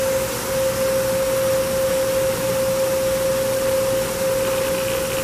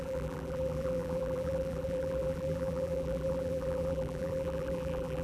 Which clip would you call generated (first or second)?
second